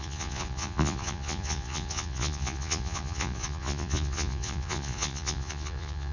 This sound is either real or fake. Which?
fake